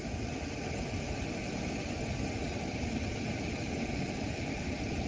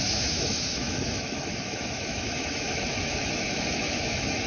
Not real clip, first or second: second